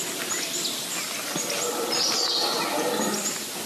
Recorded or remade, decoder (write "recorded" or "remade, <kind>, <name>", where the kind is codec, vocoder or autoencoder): recorded